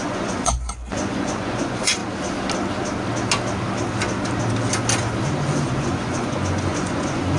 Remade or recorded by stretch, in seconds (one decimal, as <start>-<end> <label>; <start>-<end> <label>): 0.0-2.0 remade; 2.0-5.6 recorded; 5.6-7.4 remade